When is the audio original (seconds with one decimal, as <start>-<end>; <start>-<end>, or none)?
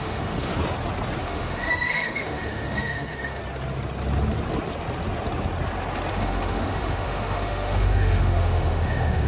0.5-1.2; 3.4-6.1